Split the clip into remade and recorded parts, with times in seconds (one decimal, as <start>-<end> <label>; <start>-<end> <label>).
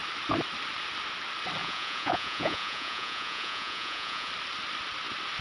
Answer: 0.0-1.6 recorded; 1.6-4.3 remade; 4.3-5.4 recorded